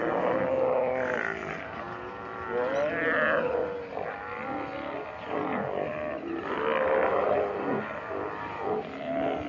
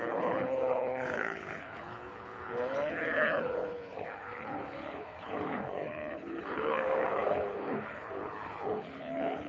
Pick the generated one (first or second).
second